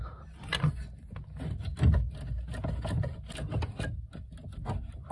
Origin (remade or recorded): recorded